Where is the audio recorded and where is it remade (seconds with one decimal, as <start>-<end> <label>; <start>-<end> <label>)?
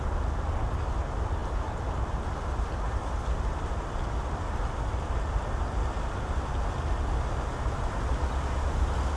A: 0.0-9.2 recorded